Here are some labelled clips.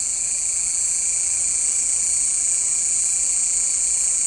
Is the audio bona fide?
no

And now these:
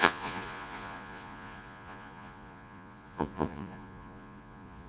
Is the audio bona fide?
no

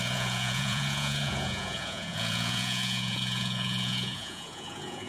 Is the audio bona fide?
no